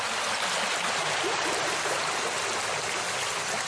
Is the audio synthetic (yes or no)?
no